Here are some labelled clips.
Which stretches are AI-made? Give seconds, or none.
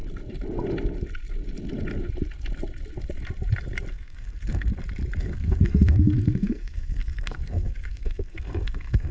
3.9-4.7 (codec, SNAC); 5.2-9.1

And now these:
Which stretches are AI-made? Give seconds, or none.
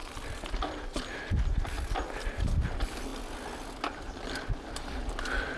none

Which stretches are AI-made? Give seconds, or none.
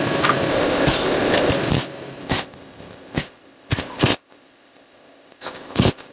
0.5-1.5 (codec, ZipCodec); 2.2-6.1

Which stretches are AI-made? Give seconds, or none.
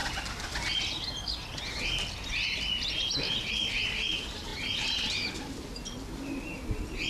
none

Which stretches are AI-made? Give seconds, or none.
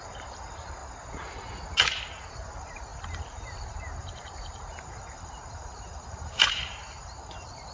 0.0-0.8 (vocoder, BigVGAN v2); 2.3-7.7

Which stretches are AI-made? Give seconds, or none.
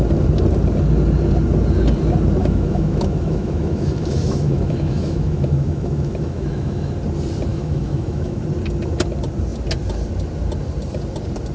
2.4-6.9 (autoencoder, DAC-VAE); 7.5-8.4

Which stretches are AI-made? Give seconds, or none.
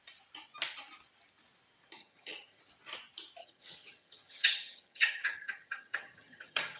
2.0-2.6 (vocoder, HiFi-GAN); 3.4-6.8